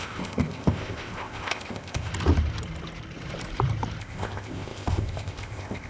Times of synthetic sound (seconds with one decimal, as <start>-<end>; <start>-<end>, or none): 0.0-2.1; 4.0-5.9